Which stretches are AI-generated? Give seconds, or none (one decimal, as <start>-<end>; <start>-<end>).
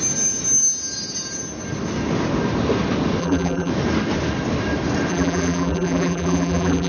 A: 3.2-3.7; 5.1-6.9